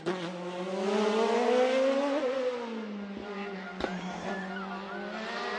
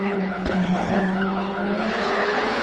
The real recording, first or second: first